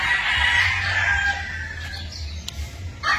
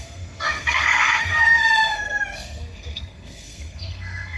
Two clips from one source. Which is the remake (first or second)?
second